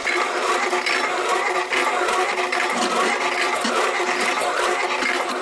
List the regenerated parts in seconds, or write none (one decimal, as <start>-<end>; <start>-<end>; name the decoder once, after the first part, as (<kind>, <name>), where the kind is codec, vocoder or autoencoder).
none